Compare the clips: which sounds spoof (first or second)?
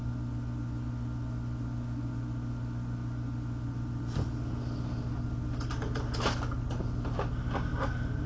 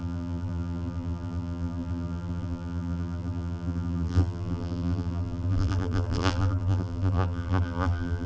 second